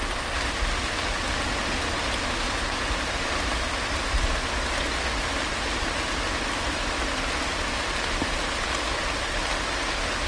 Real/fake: real